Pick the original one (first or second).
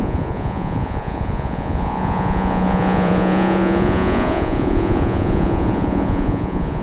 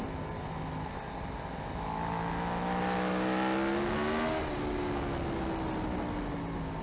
second